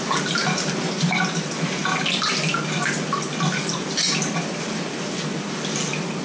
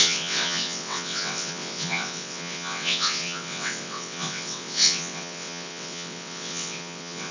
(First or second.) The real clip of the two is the first